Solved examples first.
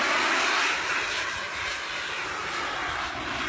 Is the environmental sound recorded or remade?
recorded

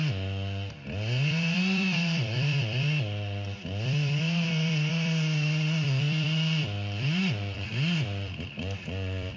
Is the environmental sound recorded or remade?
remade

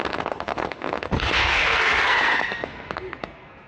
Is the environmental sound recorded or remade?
remade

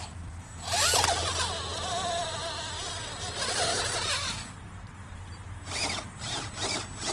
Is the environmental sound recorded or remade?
recorded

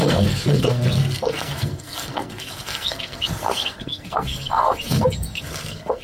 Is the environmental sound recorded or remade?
remade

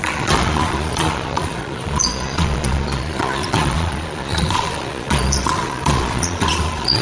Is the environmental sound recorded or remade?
remade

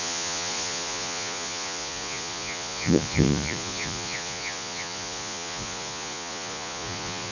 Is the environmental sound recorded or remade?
remade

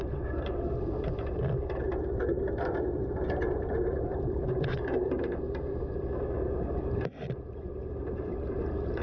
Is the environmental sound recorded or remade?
remade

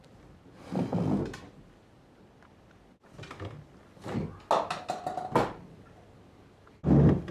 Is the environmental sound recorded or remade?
recorded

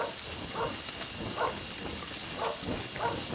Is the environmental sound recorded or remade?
recorded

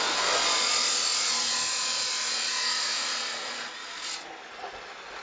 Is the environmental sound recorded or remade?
recorded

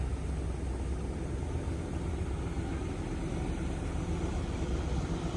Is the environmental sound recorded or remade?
recorded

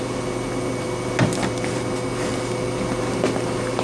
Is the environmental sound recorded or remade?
recorded